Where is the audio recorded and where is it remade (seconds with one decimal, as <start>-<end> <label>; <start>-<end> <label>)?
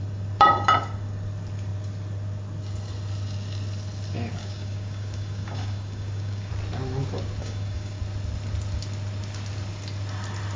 0.0-4.4 recorded; 4.4-6.5 remade; 6.5-7.4 recorded; 7.4-8.0 remade; 8.0-10.6 recorded